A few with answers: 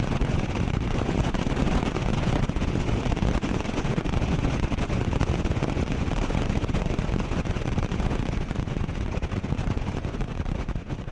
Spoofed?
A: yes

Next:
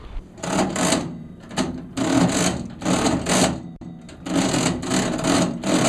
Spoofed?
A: no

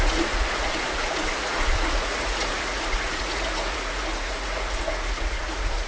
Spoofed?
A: yes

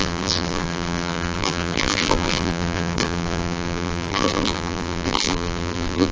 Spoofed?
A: yes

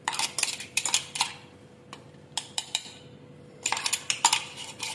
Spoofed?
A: yes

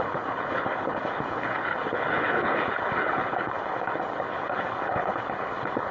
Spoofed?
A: yes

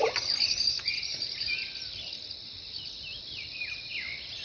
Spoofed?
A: yes